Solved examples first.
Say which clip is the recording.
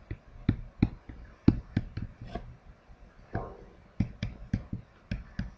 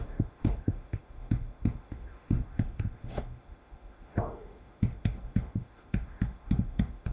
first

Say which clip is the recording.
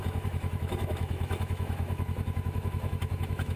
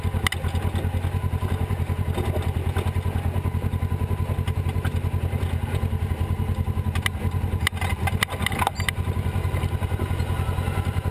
second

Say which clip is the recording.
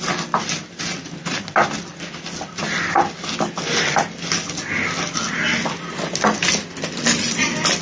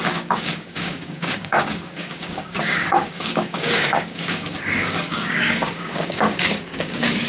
first